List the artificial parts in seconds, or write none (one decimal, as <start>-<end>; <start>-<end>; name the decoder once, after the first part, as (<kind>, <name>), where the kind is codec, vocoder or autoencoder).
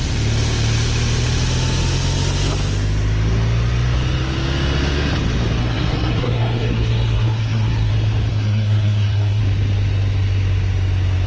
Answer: 5.6-7.9 (codec, SNAC); 8.3-9.4